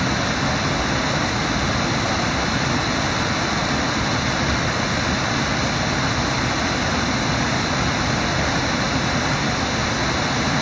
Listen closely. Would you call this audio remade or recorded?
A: recorded